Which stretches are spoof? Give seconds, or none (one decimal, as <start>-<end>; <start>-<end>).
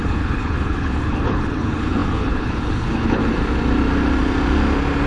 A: 0.0-3.2